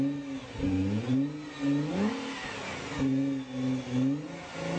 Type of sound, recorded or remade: recorded